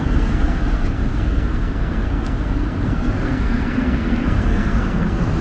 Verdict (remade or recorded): remade